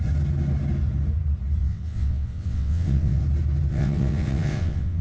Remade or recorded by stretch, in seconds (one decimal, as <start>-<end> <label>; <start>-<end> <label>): 0.0-1.6 recorded; 1.6-3.2 remade; 3.2-3.7 recorded; 3.7-5.0 remade